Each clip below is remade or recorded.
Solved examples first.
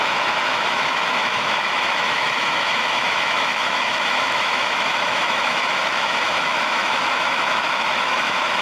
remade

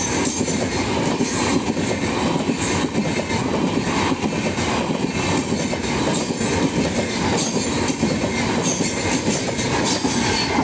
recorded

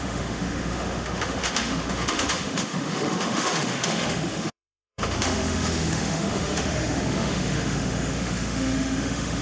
remade